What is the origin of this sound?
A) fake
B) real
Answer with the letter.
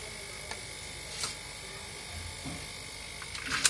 B